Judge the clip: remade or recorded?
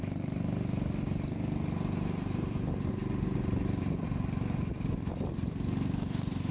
recorded